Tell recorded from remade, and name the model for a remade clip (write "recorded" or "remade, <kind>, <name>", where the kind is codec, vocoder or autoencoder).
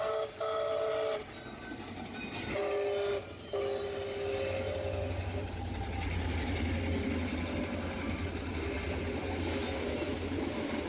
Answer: recorded